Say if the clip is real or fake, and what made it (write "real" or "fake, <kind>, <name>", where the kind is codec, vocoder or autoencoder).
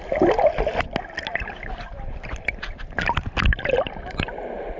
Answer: real